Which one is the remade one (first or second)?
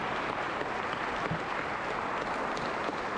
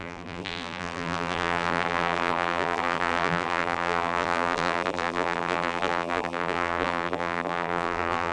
second